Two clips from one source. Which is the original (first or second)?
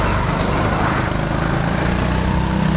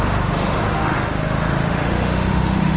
first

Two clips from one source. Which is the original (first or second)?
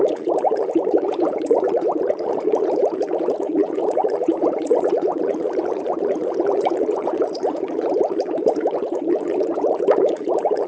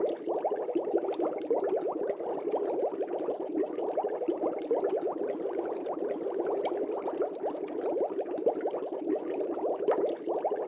second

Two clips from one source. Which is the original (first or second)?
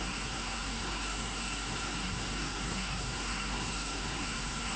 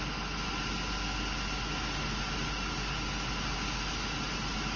second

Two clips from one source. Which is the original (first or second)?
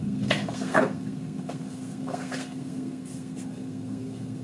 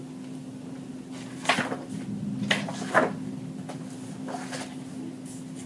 second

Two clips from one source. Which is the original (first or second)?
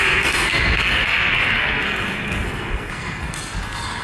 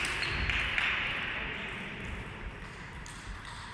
second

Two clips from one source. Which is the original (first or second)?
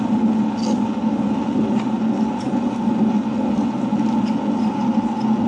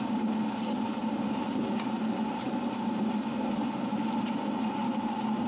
first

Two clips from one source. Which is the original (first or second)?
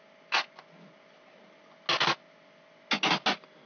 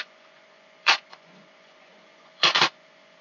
first